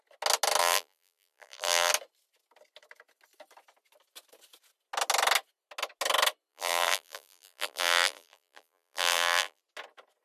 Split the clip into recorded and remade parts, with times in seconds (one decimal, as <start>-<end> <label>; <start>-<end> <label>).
0.0-0.6 recorded; 0.6-1.9 remade; 1.9-6.5 recorded; 6.5-9.6 remade; 9.6-10.2 recorded